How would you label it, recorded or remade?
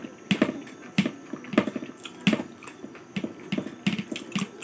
recorded